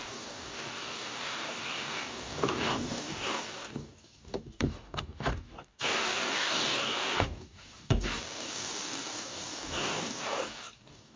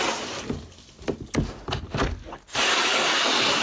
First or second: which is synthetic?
first